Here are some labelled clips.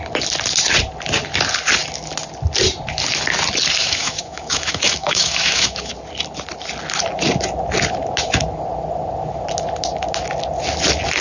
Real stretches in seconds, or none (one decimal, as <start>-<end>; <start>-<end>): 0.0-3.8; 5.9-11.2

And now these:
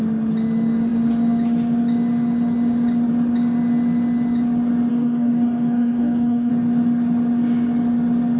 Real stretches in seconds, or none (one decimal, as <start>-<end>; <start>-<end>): 0.0-4.9; 6.5-8.4

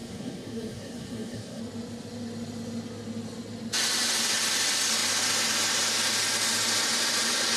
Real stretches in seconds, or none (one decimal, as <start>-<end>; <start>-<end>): 1.6-7.6

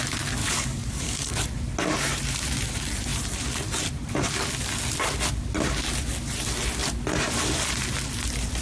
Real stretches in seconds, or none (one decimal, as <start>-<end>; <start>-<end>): 0.0-0.4; 1.3-8.6

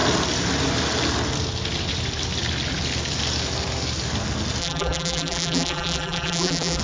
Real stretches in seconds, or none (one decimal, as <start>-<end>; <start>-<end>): 0.0-4.6

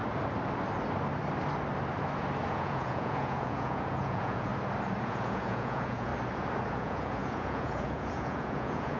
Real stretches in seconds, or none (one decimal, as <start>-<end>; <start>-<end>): 0.0-2.5; 4.5-5.0; 6.1-6.7

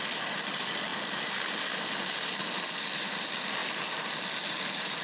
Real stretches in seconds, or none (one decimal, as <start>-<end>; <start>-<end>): 3.6-4.5

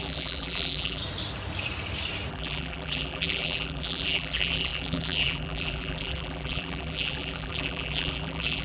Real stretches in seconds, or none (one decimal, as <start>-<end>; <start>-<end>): 1.0-2.3